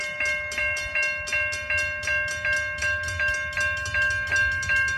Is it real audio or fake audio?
real